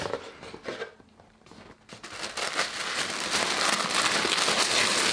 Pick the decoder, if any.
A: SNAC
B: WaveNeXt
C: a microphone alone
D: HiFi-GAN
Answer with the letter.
C